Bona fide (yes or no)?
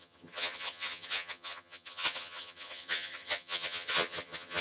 no